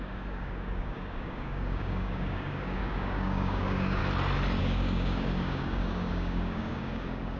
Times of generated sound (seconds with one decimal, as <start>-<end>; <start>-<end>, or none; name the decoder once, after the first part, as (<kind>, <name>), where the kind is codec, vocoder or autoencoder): 0.0-4.0 (codec, DAC); 4.6-7.4